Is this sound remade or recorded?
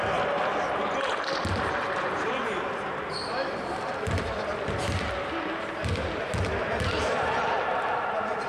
recorded